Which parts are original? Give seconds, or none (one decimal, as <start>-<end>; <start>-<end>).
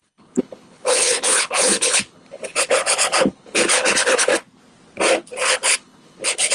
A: 4.3-5.5